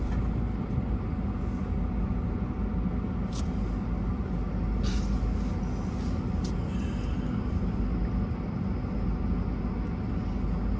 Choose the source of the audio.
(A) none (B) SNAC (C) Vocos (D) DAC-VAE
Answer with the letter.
A